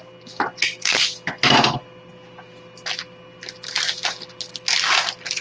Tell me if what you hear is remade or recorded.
recorded